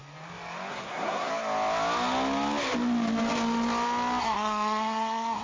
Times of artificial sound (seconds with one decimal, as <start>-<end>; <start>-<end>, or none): 0.7-1.3; 4.2-5.4